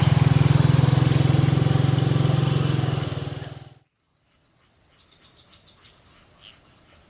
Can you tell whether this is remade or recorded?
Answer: recorded